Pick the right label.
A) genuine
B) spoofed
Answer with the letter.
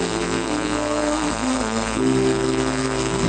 B